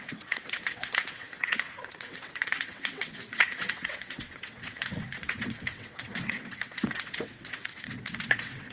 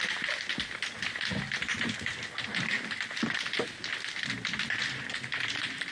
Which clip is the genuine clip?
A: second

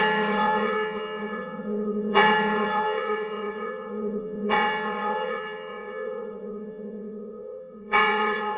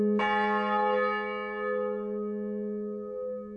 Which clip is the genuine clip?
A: second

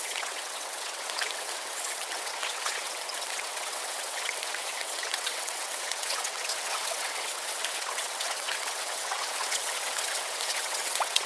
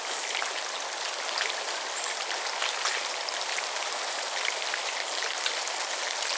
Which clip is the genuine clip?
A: second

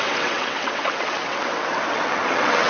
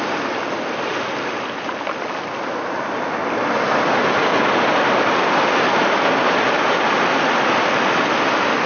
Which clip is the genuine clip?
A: second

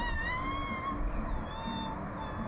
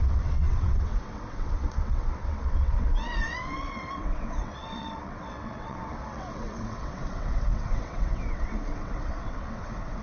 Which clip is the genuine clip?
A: first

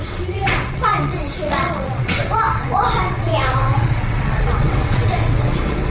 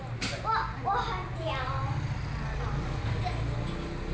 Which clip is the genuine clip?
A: second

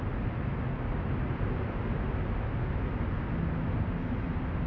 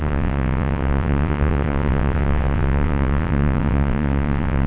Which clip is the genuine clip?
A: first